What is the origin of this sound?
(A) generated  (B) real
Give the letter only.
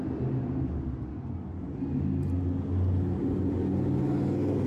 B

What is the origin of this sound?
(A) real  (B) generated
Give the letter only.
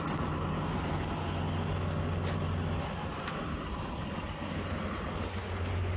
A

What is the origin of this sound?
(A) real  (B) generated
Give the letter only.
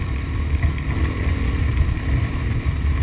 A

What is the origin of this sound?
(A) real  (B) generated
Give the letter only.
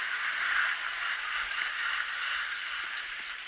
A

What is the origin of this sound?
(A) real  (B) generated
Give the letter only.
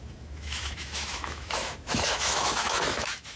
B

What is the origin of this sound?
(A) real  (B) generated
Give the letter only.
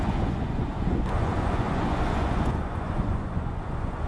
B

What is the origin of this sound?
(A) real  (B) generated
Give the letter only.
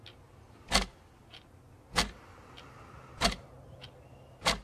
A